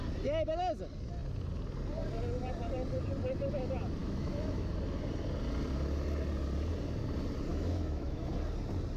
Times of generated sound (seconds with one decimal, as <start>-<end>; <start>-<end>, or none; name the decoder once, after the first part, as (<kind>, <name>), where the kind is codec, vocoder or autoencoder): 4.0-4.7 (autoencoder, DAC-VAE); 7.5-8.3